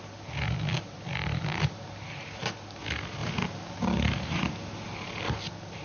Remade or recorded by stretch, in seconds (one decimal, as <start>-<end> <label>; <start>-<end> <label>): 0.0-5.8 recorded